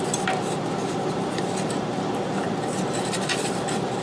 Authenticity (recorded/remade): remade